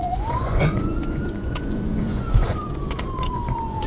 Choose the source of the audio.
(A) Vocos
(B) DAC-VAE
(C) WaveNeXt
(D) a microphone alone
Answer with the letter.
A